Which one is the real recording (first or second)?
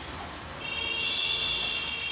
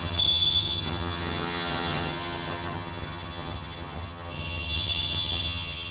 first